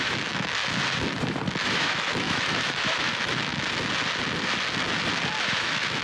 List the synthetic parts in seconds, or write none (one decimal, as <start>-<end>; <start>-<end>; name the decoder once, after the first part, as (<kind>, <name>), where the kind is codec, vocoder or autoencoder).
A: 0.0-0.6 (autoencoder, DAC-VAE); 1.6-3.5; 5.4-6.0